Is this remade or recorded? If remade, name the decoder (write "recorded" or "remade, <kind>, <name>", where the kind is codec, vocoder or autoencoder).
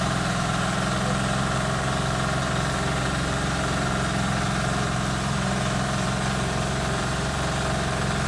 remade, vocoder, BigVGAN v2